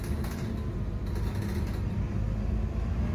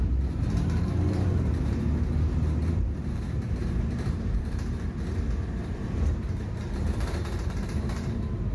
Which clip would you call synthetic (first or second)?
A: second